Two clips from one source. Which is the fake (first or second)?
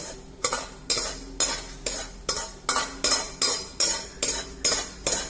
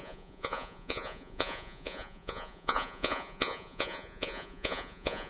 second